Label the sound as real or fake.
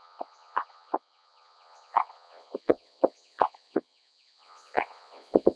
fake